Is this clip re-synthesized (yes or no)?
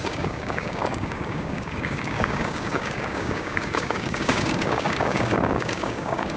yes